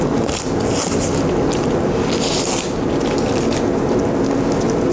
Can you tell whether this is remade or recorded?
recorded